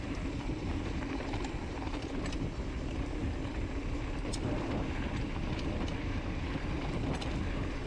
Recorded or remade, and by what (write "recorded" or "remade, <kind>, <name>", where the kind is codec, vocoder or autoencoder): recorded